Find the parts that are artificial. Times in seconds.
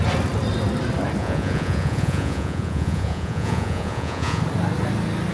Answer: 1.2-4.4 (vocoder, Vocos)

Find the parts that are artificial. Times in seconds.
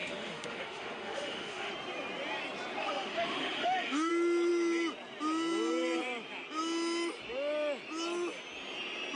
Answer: 0.0-1.7 (autoencoder, DAC-VAE); 2.8-4.1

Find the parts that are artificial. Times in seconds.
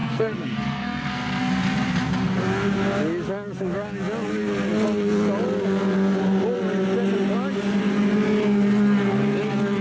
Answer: 0.0-1.5 (codec, SNAC)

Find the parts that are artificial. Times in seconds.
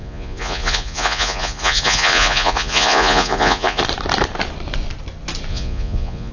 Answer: 0.0-3.8 (vocoder, Vocos); 5.5-6.3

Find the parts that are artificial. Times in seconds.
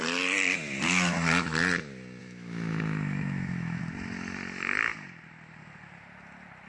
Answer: 2.2-3.8 (autoencoder, DAC-VAE)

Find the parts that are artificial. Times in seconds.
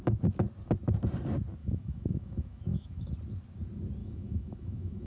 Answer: 1.6-3.1 (autoencoder, DAC-VAE); 4.0-5.1